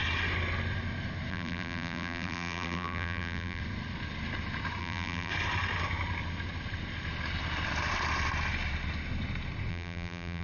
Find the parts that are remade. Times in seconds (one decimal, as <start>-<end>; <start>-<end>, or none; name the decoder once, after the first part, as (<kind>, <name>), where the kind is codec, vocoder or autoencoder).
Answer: 1.3-3.6 (vocoder, BigVGAN v2); 4.8-5.3; 9.7-10.4